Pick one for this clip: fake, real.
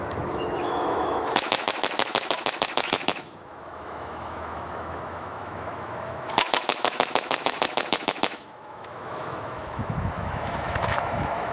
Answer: fake